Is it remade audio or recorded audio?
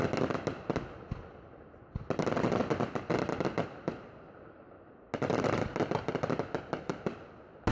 recorded